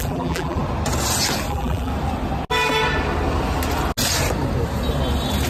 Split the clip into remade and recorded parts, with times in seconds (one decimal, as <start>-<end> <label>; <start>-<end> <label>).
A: 0.0-0.6 remade; 0.6-1.5 recorded; 1.5-1.9 remade; 1.9-5.5 recorded